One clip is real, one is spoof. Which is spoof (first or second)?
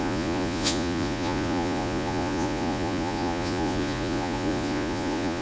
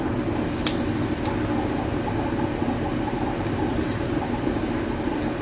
first